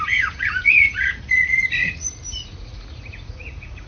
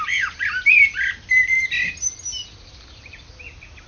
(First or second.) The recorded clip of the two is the second